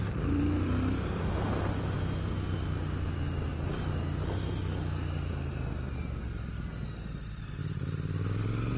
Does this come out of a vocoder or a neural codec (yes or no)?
no